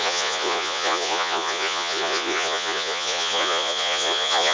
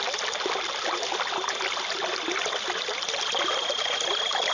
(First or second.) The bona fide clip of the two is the second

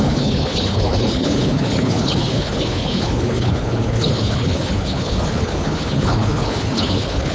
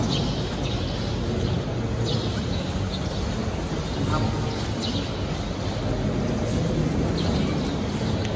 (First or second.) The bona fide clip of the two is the second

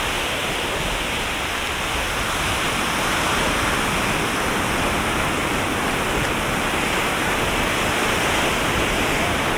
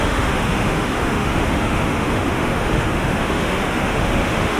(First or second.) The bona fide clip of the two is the first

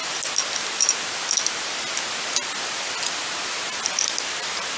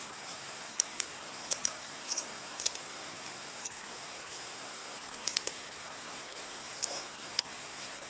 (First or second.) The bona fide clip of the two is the first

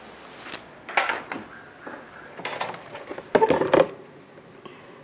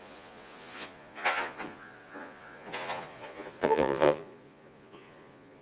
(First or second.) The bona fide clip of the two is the first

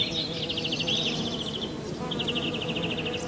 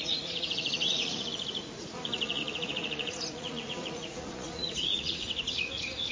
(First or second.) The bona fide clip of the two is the first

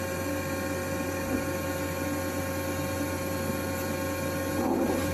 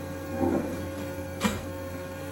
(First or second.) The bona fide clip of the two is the first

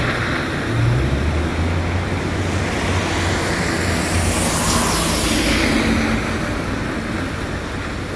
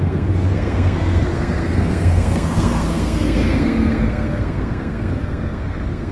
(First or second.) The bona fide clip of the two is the first